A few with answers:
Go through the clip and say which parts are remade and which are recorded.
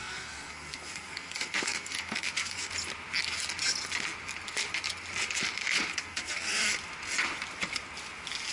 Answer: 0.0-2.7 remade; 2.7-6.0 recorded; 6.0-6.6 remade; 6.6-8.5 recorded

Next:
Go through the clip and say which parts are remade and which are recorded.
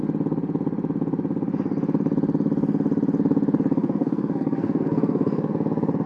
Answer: 0.0-3.8 recorded; 3.8-5.5 remade; 5.5-6.1 recorded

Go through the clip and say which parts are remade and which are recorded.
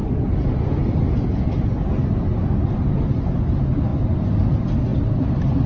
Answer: 0.0-5.7 recorded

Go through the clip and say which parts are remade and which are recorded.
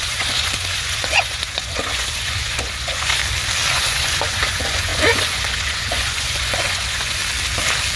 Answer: 0.0-3.2 remade; 3.2-3.7 recorded; 3.7-7.2 remade; 7.2-8.0 recorded